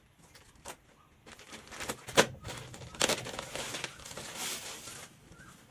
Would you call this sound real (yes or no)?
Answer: yes